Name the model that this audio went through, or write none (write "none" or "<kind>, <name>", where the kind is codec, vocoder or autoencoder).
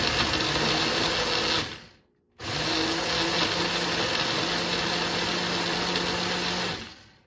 none